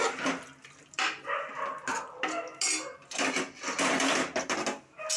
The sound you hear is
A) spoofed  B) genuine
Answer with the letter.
B